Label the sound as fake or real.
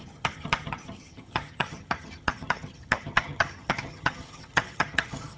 fake